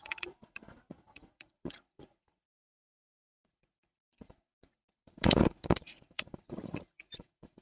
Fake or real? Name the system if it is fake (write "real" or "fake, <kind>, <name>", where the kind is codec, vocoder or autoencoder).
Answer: fake, vocoder, Vocos